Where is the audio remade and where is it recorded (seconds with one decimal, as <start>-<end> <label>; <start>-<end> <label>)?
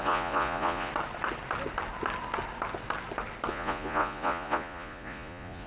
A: 0.0-0.9 remade; 0.9-3.5 recorded; 3.5-5.7 remade